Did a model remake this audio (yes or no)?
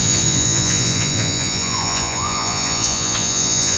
yes